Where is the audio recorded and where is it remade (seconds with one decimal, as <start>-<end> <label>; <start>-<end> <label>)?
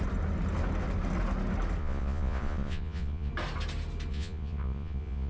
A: 0.0-1.8 recorded; 1.8-3.3 remade; 3.3-4.1 recorded; 4.1-5.3 remade